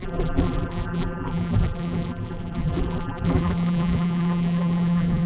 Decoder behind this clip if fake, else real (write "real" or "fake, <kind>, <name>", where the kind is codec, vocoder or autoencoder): fake, vocoder, BigVGAN v2